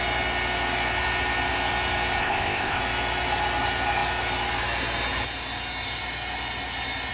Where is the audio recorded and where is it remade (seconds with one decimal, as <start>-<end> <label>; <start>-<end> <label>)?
0.0-2.2 recorded; 2.2-2.8 remade; 2.8-7.1 recorded